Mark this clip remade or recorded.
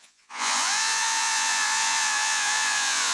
remade